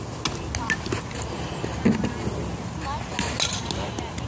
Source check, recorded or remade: recorded